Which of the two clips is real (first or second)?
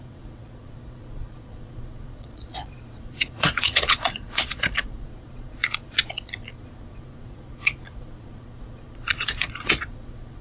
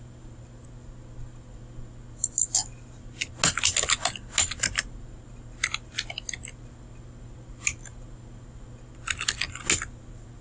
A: second